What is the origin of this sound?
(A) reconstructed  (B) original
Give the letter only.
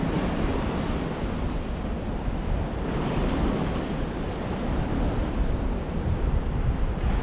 B